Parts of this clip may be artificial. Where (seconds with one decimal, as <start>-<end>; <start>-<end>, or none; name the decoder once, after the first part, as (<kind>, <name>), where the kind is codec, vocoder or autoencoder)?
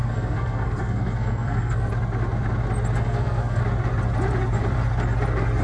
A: 0.0-1.9 (codec, SNAC); 3.0-3.6